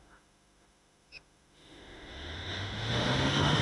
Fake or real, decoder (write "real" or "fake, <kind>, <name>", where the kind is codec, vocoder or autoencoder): fake, autoencoder, DAC-VAE